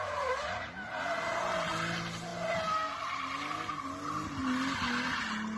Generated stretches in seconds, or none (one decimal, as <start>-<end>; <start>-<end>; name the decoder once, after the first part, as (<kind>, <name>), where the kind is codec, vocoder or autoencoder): none